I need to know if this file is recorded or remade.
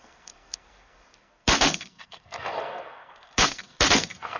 remade